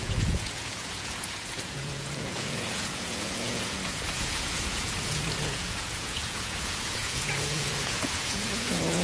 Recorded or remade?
remade